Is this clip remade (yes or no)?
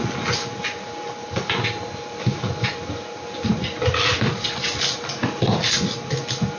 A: no